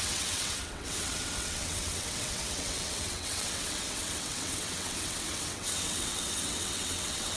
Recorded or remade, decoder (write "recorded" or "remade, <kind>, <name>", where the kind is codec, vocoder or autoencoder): remade, vocoder, WaveNeXt